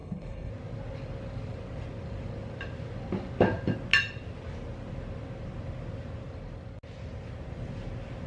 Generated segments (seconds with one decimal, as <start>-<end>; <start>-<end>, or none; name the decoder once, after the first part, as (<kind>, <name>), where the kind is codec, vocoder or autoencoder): 0.0-0.5 (codec, HILCodec)